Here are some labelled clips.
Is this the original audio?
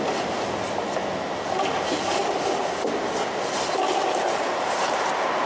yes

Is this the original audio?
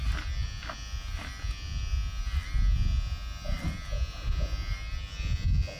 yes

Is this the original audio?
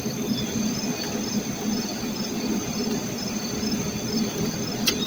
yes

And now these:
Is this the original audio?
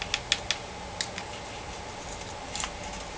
yes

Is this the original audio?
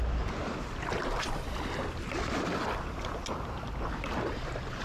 yes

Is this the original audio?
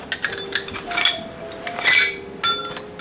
yes